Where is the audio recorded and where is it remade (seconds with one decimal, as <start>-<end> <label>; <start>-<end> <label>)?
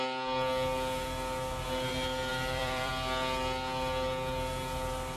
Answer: 0.0-2.3 recorded; 2.3-2.9 remade; 2.9-5.2 recorded